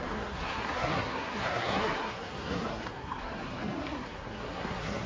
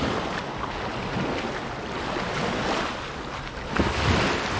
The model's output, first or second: first